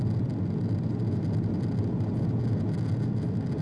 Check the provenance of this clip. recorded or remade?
recorded